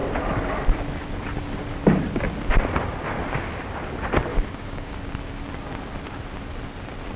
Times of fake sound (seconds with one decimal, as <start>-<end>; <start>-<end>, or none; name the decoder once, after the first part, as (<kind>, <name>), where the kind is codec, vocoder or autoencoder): 4.3-5.0 (codec, DAC)